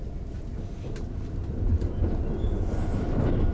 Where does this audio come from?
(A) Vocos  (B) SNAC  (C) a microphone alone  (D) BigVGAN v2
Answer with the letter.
C